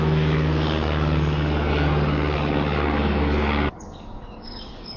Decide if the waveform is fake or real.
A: fake